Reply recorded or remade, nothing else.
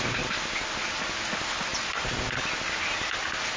recorded